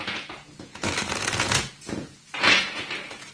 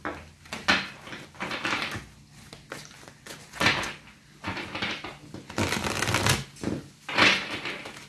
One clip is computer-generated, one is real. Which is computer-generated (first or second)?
first